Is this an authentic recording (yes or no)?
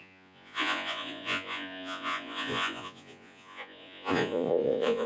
no